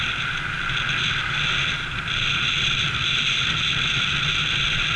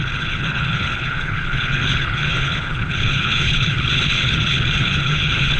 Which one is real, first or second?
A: first